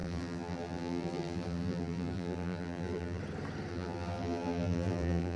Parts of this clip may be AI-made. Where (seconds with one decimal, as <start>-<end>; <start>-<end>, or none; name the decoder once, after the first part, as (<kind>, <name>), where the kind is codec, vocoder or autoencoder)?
0.0-3.2 (vocoder, BigVGAN v2); 3.7-5.4